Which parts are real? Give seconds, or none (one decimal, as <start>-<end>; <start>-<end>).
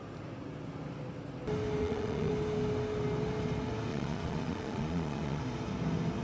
0.0-1.8; 2.3-3.9; 5.4-6.2